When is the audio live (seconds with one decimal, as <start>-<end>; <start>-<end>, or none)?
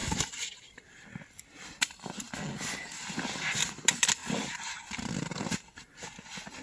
0.0-4.2; 5.1-6.6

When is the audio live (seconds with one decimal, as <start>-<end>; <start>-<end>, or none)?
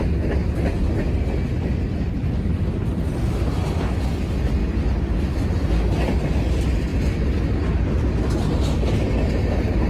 0.0-0.4; 1.8-6.9; 8.3-9.9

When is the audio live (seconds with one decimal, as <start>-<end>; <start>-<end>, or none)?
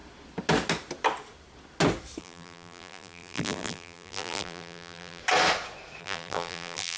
0.0-2.2; 5.2-6.0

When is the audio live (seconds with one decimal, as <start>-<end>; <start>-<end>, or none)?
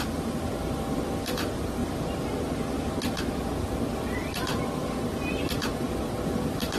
1.8-3.2